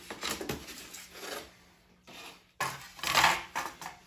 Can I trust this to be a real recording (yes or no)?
yes